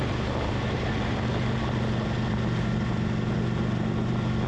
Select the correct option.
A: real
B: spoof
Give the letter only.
A